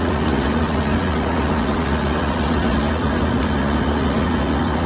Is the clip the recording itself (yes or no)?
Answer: no